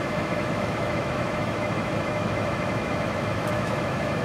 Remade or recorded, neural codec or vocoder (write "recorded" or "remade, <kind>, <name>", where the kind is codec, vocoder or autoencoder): remade, autoencoder, DAC-VAE